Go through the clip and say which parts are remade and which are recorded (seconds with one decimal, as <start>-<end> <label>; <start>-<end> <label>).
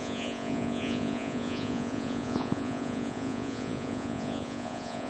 0.0-5.1 remade